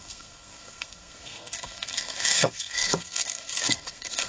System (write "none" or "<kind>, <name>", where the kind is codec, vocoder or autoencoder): codec, SNAC